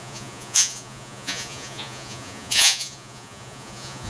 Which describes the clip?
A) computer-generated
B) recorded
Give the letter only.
A